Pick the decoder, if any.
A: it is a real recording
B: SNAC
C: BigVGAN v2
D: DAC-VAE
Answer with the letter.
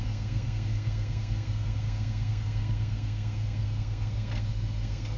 B